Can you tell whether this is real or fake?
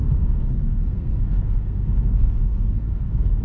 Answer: fake